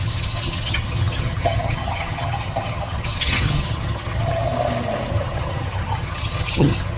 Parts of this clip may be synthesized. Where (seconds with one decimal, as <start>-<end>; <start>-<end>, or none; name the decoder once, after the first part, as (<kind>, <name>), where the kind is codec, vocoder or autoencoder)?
0.0-4.5 (vocoder, HiFi-GAN); 5.1-7.0